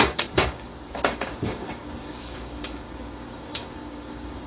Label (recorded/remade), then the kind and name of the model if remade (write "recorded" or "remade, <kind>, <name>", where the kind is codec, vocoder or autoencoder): remade, codec, DAC